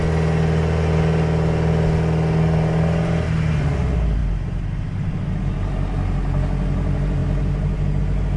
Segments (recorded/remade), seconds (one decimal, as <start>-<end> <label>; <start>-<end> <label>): 0.0-8.4 recorded